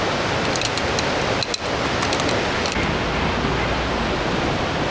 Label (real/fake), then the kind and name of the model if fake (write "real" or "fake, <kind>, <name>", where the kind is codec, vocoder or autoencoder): real